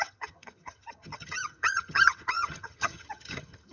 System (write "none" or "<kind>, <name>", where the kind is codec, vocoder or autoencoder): vocoder, HiFi-GAN